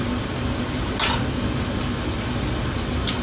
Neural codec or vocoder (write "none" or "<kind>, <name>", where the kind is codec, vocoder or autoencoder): none